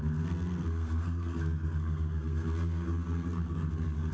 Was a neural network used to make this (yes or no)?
yes